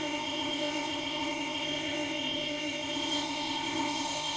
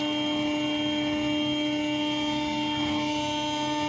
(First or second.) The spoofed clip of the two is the first